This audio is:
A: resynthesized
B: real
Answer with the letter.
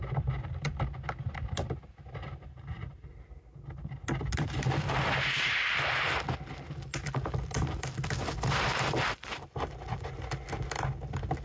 B